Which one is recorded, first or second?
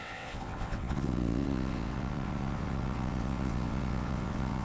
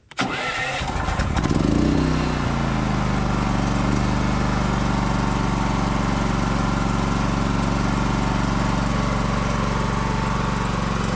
second